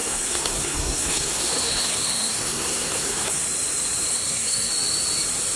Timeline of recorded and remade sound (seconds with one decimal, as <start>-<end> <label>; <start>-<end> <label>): 0.0-3.4 remade; 3.4-4.1 recorded; 4.1-4.7 remade; 4.7-5.6 recorded